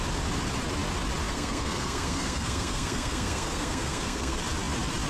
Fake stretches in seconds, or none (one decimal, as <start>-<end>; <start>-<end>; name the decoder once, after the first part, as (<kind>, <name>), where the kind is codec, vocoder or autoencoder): 1.3-4.4 (codec, SNAC)